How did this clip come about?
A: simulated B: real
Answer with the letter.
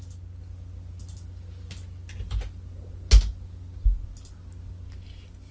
B